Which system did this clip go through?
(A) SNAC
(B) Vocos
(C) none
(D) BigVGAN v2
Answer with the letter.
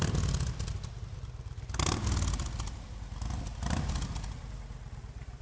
C